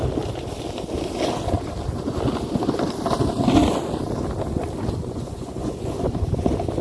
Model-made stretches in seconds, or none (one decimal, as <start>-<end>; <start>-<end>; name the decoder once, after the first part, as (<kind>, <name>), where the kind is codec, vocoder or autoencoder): 5.0-5.9 (vocoder, Vocos)